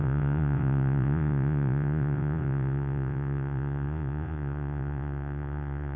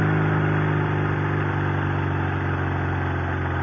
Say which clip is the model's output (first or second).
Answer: first